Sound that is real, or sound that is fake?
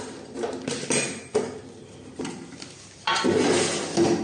real